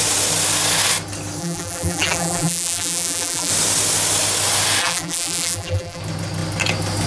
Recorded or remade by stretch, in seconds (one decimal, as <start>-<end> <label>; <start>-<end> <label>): 0.0-1.4 recorded; 1.4-3.5 remade; 3.5-4.8 recorded; 4.8-6.0 remade; 6.0-7.1 recorded